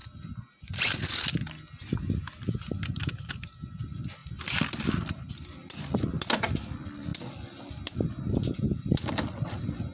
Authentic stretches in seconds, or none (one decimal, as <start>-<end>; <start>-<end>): 0.0-3.3